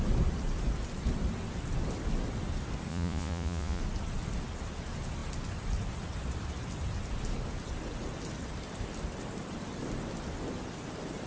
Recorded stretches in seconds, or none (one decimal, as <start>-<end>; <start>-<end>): 0.0-2.9; 3.8-11.3